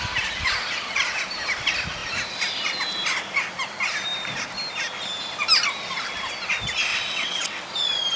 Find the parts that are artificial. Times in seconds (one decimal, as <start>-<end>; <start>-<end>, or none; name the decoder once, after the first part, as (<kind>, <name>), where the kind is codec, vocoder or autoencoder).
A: 6.9-7.6 (vocoder, WaveNeXt)